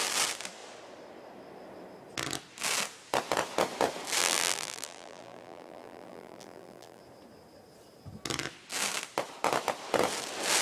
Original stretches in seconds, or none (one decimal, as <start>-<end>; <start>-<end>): 0.0-4.2; 7.0-10.6